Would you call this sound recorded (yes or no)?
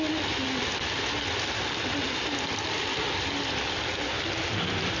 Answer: yes